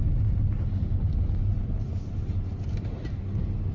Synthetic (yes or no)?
no